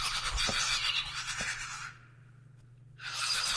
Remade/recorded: recorded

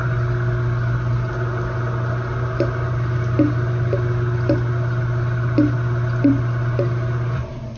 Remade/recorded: recorded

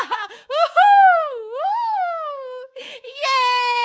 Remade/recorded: remade